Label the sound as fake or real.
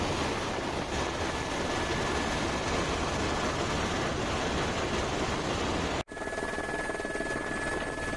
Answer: real